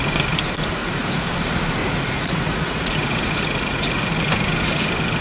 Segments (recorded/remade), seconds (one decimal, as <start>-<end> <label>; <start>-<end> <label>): 0.0-0.7 recorded; 0.7-1.3 remade; 1.3-1.8 recorded; 1.8-4.1 remade; 4.1-5.2 recorded